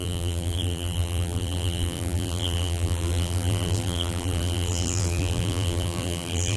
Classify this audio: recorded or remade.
remade